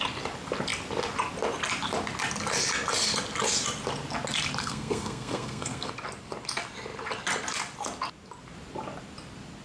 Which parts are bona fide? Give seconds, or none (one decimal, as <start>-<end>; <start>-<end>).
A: 0.0-4.6; 5.9-9.6